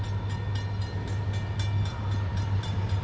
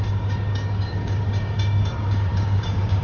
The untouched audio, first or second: first